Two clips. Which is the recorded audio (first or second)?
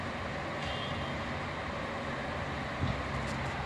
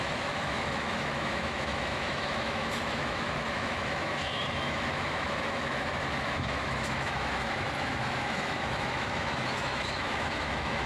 first